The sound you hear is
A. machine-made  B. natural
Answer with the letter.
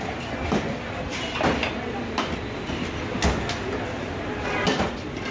B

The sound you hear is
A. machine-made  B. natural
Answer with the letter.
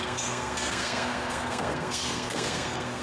A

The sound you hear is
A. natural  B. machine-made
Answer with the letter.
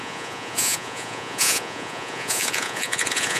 B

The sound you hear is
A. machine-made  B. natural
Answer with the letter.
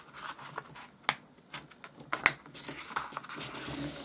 B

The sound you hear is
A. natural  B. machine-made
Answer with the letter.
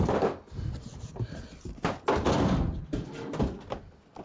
A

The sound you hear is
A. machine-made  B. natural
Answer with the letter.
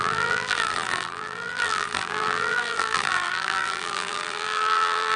A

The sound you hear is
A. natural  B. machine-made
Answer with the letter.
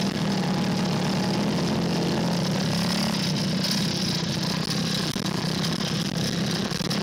A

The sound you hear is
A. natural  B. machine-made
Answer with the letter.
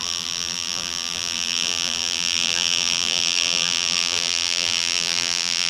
B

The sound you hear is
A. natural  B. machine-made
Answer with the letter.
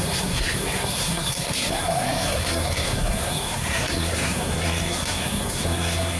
B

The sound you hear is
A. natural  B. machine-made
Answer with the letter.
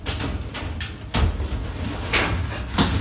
A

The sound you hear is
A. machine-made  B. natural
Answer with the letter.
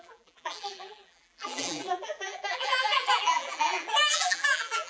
A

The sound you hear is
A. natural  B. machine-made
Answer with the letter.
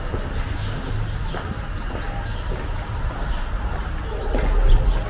A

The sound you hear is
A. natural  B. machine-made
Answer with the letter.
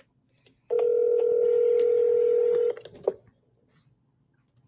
A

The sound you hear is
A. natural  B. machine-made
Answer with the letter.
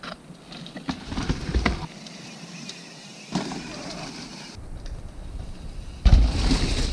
B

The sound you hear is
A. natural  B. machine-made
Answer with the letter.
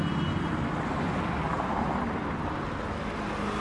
A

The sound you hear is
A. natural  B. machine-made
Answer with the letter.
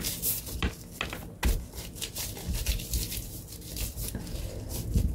A